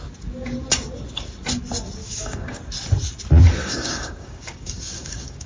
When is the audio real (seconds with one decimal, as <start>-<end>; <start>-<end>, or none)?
0.0-2.0; 2.6-3.6